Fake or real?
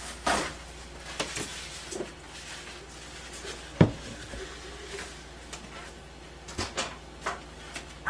real